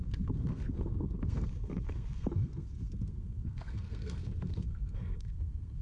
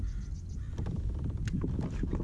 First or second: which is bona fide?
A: second